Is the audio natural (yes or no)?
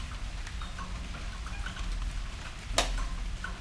yes